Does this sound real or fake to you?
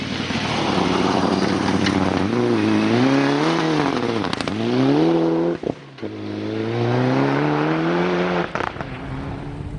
real